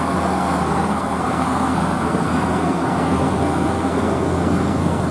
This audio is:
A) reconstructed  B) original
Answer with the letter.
A